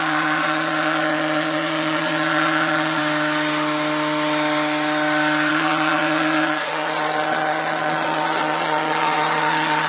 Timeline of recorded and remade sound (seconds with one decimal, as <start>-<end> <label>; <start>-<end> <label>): 0.0-3.0 remade; 3.0-5.5 recorded; 5.5-9.9 remade